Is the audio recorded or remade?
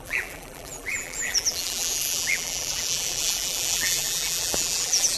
remade